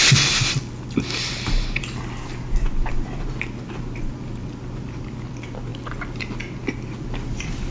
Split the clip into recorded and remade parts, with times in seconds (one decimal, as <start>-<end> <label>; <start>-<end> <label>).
0.0-7.7 recorded